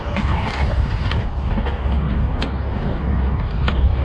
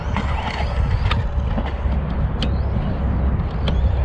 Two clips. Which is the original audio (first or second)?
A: second